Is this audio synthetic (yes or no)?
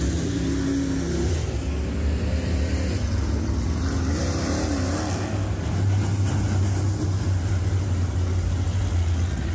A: no